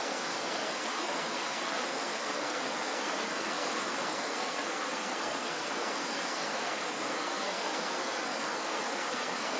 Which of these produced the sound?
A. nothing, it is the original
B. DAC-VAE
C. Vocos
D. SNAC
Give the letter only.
D